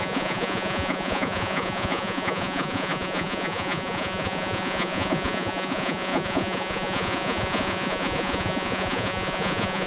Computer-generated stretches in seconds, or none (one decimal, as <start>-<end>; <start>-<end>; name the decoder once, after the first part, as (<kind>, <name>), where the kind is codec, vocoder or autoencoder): 0.0-9.9 (vocoder, Vocos)